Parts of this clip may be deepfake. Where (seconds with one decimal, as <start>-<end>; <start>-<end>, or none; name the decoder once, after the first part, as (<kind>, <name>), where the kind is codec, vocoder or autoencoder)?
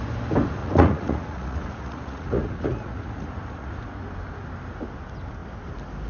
0.6-3.7 (vocoder, Vocos)